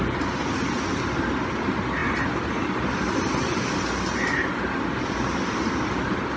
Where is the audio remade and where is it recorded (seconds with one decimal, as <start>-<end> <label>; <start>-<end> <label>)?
0.0-6.4 recorded